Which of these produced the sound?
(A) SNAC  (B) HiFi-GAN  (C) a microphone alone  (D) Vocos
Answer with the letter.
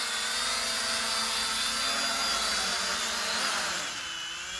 C